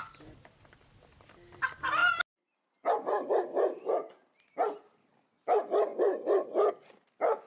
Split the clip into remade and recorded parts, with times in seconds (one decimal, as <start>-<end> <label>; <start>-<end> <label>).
0.0-7.5 recorded

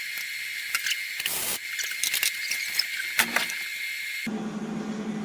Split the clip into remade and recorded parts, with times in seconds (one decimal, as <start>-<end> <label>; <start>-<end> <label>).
0.0-5.2 recorded

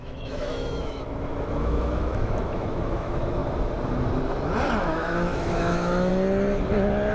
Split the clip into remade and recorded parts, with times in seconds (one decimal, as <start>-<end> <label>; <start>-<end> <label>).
0.0-3.4 remade; 3.4-4.8 recorded; 4.8-6.1 remade; 6.1-7.1 recorded

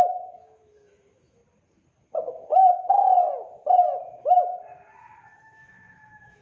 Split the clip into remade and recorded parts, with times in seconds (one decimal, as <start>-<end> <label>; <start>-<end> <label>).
0.0-1.4 remade; 1.4-5.2 recorded; 5.2-6.4 remade

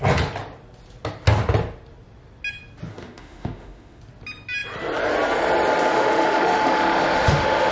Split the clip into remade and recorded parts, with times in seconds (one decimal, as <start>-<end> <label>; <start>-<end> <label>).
0.0-2.9 recorded; 2.9-4.0 remade; 4.0-5.9 recorded; 5.9-7.7 remade